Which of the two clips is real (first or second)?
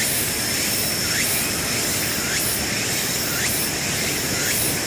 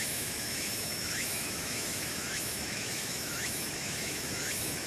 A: first